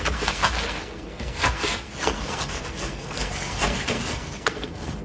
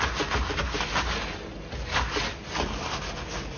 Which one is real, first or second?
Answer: second